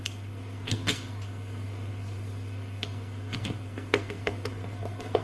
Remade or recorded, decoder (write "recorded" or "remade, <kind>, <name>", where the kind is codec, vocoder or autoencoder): remade, codec, SNAC